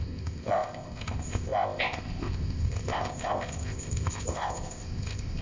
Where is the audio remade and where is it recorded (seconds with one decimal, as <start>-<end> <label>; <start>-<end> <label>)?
0.0-5.4 remade